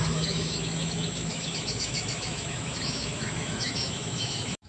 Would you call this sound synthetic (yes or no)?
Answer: yes